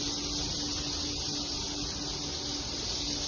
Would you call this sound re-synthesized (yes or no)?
no